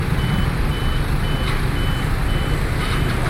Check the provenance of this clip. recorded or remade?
recorded